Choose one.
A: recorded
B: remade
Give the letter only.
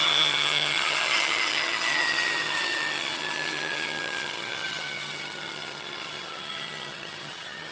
B